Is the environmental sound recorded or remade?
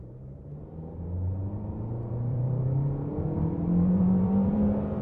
remade